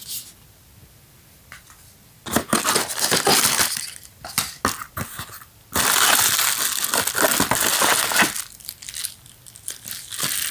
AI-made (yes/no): no